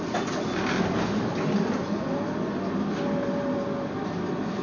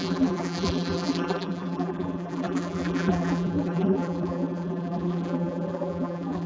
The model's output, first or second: second